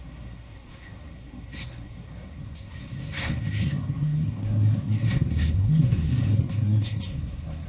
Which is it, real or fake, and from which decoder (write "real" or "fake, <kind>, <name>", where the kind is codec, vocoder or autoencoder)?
fake, codec, SNAC